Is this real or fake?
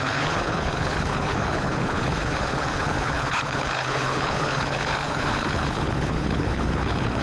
fake